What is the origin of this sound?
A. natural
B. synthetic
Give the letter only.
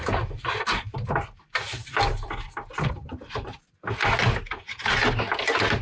A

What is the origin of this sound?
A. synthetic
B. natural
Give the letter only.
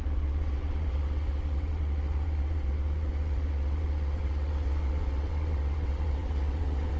A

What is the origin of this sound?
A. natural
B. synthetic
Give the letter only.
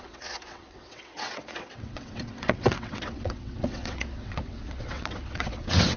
B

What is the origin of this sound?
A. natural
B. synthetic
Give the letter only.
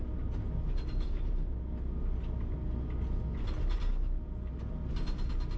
A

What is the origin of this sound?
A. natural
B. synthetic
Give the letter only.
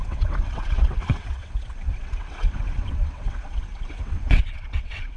B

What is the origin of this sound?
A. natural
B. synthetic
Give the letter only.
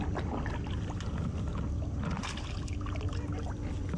A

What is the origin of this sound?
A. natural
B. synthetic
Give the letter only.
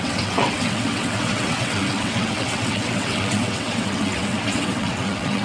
B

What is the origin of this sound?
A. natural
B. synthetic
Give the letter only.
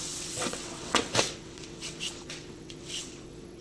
B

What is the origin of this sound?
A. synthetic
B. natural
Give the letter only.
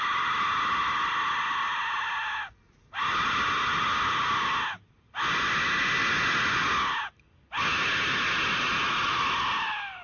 B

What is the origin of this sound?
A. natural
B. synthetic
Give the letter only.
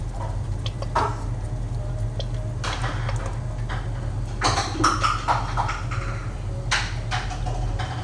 A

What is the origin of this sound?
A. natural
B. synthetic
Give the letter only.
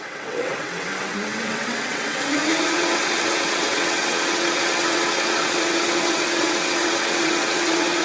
B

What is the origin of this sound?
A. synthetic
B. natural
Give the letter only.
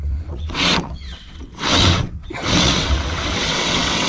A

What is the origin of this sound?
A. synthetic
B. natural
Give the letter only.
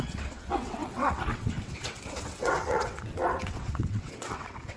A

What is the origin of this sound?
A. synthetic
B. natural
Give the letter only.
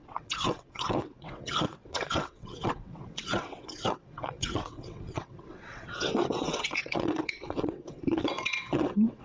A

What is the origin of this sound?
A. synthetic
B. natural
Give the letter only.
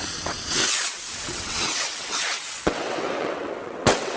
A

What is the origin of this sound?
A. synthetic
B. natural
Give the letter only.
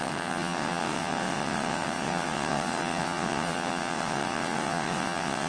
A